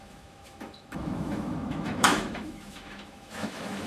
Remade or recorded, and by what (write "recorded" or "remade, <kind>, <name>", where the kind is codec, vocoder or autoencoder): remade, autoencoder, DAC-VAE